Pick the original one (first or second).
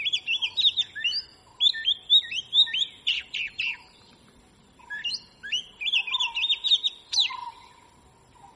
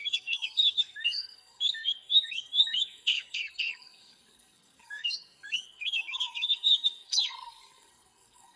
first